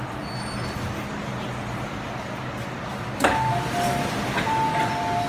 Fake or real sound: real